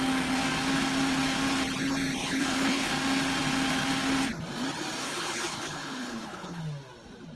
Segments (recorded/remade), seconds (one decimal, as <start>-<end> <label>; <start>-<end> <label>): 0.0-2.2 recorded; 2.2-2.9 remade; 2.9-5.0 recorded; 5.0-6.6 remade; 6.6-7.3 recorded